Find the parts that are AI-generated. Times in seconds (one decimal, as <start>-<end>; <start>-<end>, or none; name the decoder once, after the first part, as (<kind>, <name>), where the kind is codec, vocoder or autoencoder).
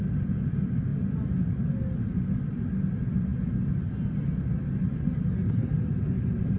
none